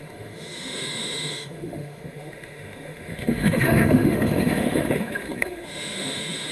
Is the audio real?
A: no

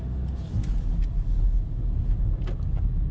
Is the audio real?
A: yes